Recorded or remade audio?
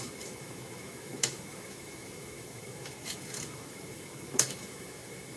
remade